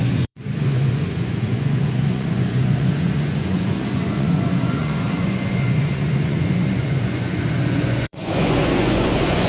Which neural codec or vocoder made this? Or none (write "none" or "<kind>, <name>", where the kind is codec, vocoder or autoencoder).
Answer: vocoder, Vocos